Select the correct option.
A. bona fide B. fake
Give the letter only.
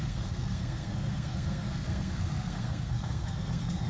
B